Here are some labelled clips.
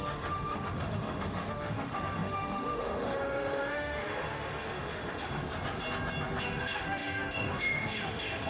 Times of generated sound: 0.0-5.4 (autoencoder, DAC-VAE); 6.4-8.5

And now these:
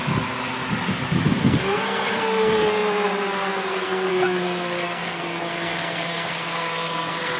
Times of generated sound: 1.4-7.4 (codec, SNAC)

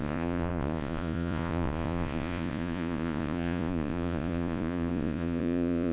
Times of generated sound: 0.0-5.9 (vocoder, Vocos)

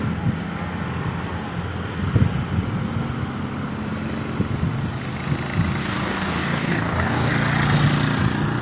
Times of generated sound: 5.8-7.3 (codec, DAC)

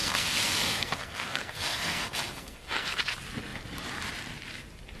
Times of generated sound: 0.0-3.0 (codec, SNAC)

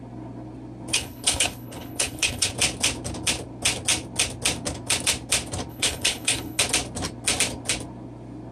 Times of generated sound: 0.9-2.5 (codec, HILCodec); 5.7-6.6

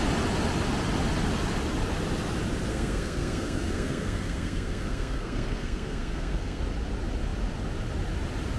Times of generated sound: 2.7-6.6 (codec, SNAC)